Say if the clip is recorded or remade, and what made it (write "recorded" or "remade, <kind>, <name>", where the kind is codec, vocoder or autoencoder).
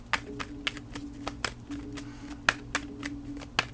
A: recorded